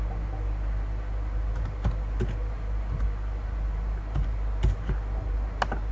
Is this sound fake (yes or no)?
no